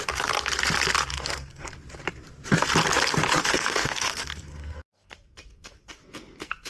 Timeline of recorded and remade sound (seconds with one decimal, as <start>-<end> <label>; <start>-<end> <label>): 0.0-1.1 recorded; 1.1-1.7 remade; 1.7-3.4 recorded; 3.4-6.7 remade